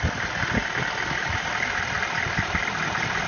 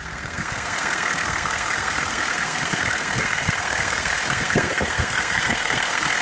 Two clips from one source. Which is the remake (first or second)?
second